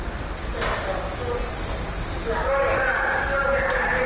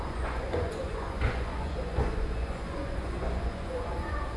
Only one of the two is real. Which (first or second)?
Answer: first